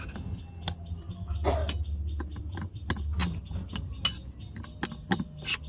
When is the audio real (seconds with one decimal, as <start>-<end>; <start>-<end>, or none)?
0.0-5.7